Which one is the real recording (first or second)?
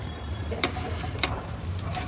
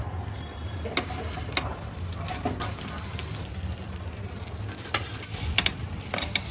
second